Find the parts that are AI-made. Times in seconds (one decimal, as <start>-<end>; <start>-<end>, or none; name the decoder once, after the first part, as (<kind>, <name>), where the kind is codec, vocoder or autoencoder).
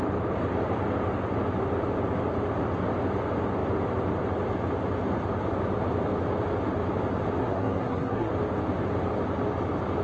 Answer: 7.4-8.3 (codec, SNAC)